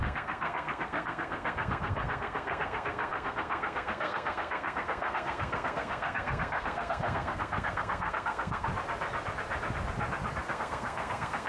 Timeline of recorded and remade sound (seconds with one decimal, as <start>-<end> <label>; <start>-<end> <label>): 0.0-8.7 remade; 8.7-10.5 recorded; 10.5-11.5 remade